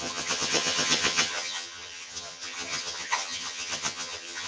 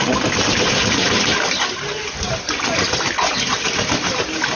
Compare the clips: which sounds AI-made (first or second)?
first